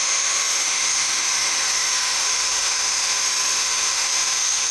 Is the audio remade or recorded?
remade